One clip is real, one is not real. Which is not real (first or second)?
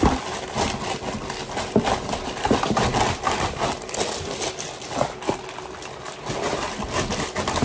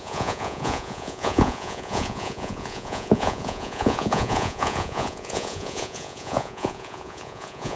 second